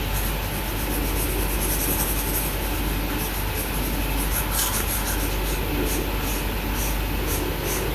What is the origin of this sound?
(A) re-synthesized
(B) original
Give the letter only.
B